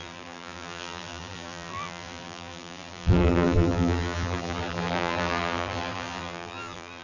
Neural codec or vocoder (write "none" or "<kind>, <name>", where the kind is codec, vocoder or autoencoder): vocoder, BigVGAN v2